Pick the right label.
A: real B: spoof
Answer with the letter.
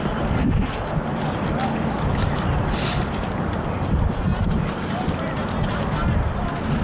A